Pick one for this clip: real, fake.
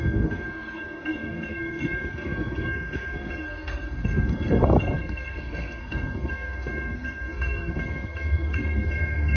fake